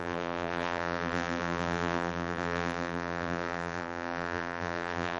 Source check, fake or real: fake